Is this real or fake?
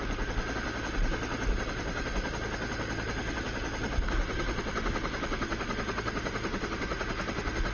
real